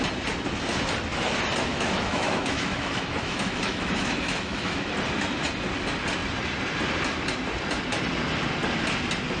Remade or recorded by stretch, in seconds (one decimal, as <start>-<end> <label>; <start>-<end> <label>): 0.0-1.7 recorded; 1.7-4.9 remade; 4.9-9.4 recorded